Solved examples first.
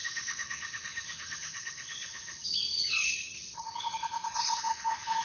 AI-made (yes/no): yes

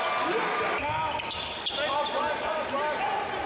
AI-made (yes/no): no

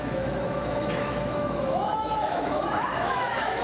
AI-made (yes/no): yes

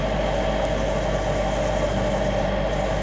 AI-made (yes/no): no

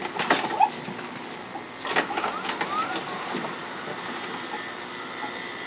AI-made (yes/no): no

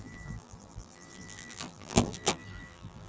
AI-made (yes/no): yes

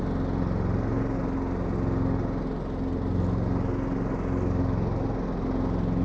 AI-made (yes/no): no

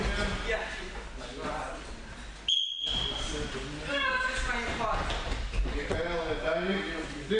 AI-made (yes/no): no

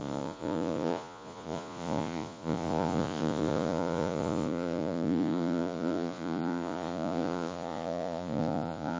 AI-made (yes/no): yes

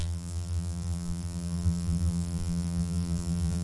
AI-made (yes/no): yes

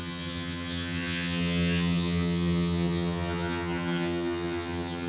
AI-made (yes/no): yes